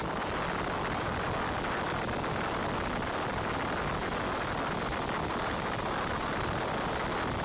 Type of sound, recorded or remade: recorded